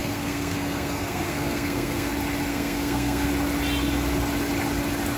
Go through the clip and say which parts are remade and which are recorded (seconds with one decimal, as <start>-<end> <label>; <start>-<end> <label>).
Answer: 0.0-2.1 remade; 2.1-2.5 recorded; 2.5-3.3 remade; 3.3-5.2 recorded